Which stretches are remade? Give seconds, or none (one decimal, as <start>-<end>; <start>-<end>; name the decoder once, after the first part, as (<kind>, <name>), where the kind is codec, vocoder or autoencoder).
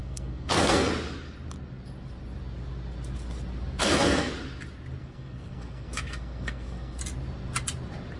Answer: 0.0-0.9 (codec, SNAC); 3.8-4.3; 5.0-7.0